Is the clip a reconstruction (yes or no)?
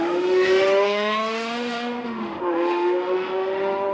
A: yes